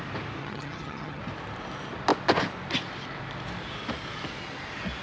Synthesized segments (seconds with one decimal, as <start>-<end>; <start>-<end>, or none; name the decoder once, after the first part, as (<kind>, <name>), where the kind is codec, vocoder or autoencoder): 0.4-1.2 (vocoder, HiFi-GAN)